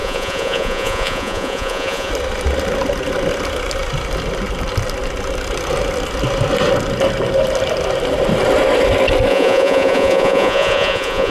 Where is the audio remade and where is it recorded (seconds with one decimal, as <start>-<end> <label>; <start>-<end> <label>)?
0.0-2.1 remade; 2.1-9.3 recorded; 9.3-11.3 remade